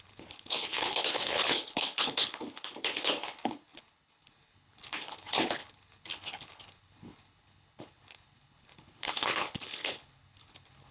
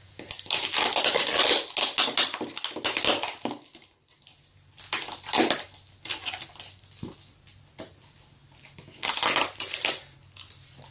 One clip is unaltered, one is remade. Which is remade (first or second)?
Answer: first